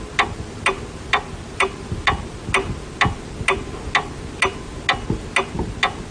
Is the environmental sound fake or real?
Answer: real